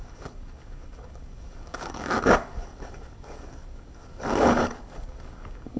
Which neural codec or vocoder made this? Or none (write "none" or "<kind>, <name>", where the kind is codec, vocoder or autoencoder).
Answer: codec, DAC